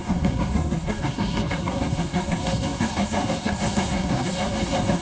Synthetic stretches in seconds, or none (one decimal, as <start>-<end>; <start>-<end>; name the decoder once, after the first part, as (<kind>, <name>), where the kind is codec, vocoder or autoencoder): 0.0-5.0 (codec, SNAC)